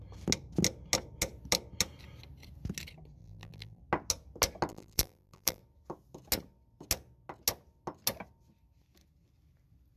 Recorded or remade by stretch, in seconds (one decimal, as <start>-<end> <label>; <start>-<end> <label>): 0.0-3.2 recorded; 3.2-3.8 remade; 3.8-4.7 recorded; 4.7-5.6 remade; 5.6-10.0 recorded